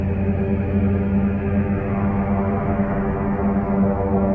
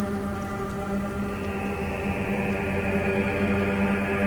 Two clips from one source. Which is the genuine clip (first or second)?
second